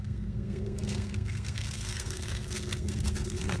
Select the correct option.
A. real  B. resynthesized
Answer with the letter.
B